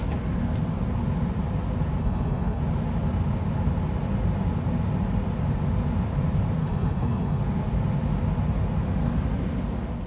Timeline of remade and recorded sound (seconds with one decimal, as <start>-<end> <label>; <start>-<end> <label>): 0.0-2.0 recorded; 2.0-2.6 remade; 2.6-6.6 recorded; 6.6-7.4 remade; 7.4-10.1 recorded